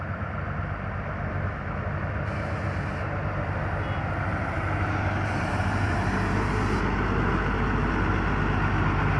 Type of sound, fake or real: real